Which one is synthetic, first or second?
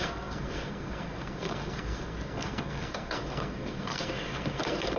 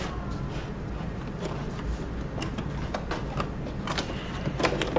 first